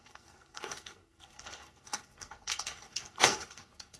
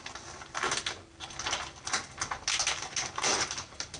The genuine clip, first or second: second